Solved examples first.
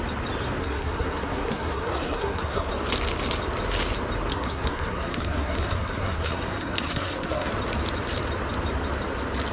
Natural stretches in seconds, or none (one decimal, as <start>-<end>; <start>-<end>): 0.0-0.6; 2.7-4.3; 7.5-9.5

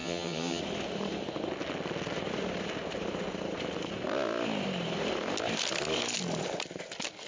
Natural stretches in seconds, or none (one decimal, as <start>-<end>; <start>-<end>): 0.6-7.3

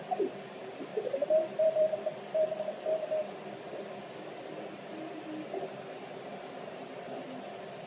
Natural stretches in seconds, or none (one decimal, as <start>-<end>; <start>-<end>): 0.0-0.9; 5.6-7.9